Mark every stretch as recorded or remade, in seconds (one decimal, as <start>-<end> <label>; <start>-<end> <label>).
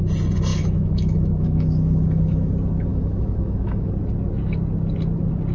0.0-0.5 recorded; 0.5-2.5 remade; 2.5-2.9 recorded; 2.9-3.9 remade; 3.9-5.5 recorded